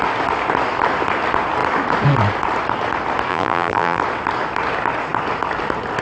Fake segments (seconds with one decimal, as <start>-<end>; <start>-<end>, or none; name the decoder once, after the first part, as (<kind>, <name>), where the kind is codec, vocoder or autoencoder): 3.3-4.0 (vocoder, BigVGAN v2)